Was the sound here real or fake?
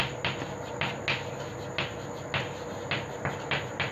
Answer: real